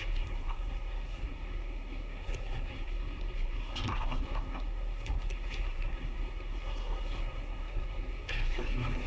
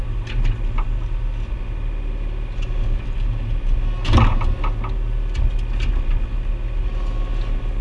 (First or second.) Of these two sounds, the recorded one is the second